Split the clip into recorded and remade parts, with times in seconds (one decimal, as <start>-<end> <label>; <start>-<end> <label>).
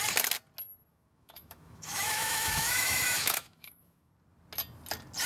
0.0-0.9 recorded; 0.9-4.1 remade; 4.1-5.3 recorded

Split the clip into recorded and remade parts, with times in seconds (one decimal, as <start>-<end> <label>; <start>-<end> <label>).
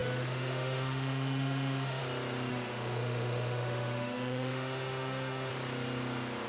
0.0-2.0 remade; 2.0-2.5 recorded; 2.5-5.5 remade; 5.5-6.5 recorded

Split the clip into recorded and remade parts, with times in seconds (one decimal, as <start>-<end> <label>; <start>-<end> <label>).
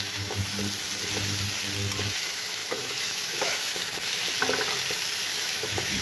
0.0-0.5 remade; 0.5-2.2 recorded; 2.2-4.2 remade; 4.2-5.3 recorded; 5.3-6.0 remade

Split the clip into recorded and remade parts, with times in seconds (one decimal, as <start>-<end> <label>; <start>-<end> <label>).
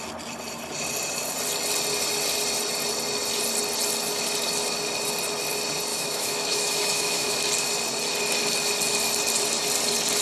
0.0-5.9 recorded; 5.9-7.4 remade; 7.4-10.2 recorded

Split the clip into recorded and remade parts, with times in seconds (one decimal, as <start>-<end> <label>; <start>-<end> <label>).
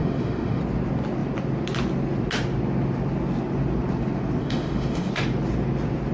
0.0-0.6 remade; 0.6-4.4 recorded; 4.4-5.1 remade; 5.1-6.1 recorded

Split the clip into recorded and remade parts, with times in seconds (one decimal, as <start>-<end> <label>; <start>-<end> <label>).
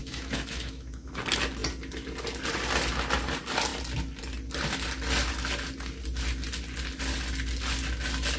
0.0-1.1 remade; 1.1-8.4 recorded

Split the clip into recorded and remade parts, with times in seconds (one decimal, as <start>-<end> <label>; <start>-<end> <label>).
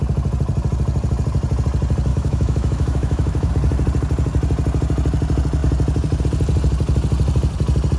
0.0-2.1 recorded; 2.1-3.5 remade; 3.5-8.0 recorded